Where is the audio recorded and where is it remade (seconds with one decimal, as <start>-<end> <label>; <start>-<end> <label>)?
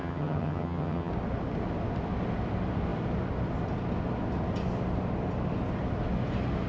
0.0-1.1 remade; 1.1-6.7 recorded